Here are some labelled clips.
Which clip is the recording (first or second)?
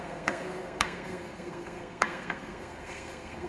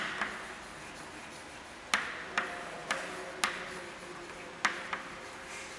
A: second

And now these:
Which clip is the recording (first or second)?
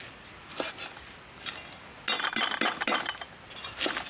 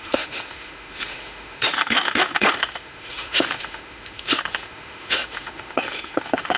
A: first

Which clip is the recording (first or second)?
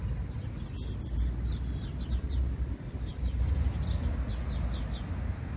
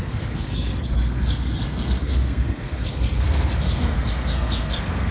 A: first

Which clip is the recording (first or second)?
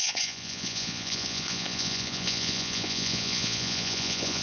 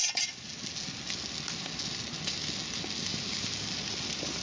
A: second